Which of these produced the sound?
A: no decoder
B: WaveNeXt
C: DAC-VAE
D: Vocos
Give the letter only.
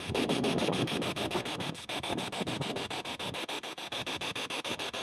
C